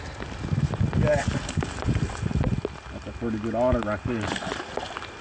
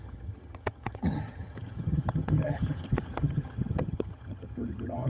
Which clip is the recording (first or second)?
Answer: first